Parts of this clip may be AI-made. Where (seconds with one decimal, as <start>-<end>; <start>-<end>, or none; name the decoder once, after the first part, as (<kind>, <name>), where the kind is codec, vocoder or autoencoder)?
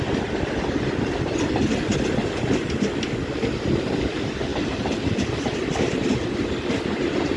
4.5-5.0 (vocoder, BigVGAN v2)